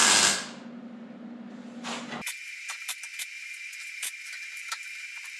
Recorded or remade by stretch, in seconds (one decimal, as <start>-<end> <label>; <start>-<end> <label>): 0.0-2.4 recorded; 2.4-5.4 remade